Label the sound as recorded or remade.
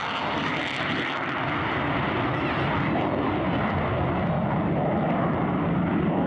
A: recorded